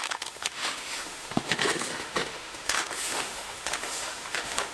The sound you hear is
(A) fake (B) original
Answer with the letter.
A